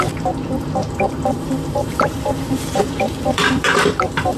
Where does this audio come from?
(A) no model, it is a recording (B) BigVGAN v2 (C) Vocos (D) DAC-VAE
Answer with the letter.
B